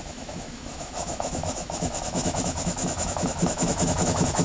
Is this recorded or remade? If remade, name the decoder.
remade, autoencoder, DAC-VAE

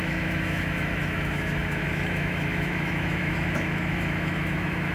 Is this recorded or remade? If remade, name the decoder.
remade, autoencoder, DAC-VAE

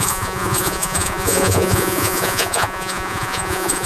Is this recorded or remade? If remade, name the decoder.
remade, vocoder, Vocos